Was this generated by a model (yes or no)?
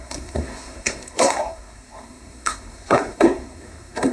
yes